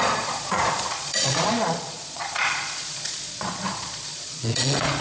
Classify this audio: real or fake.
fake